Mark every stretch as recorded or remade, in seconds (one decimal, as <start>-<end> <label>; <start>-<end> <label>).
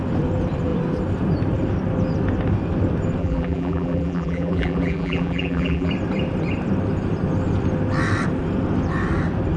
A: 0.0-3.2 recorded; 3.2-5.9 remade; 5.9-9.6 recorded